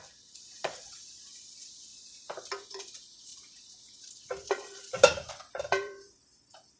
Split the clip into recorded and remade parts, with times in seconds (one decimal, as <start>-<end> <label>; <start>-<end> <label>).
0.0-1.9 remade; 1.9-2.5 recorded; 2.5-6.8 remade